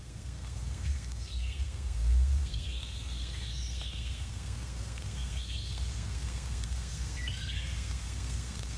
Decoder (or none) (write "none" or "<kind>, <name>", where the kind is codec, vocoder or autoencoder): codec, SNAC